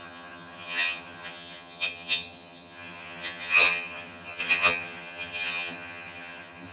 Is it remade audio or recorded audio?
remade